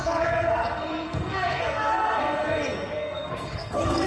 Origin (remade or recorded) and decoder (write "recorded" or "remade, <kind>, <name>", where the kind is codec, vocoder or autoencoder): remade, codec, SNAC